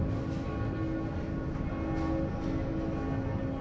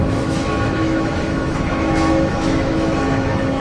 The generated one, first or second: second